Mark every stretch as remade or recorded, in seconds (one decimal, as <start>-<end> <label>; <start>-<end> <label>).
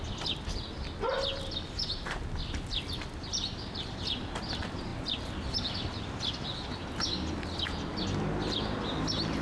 0.0-9.4 recorded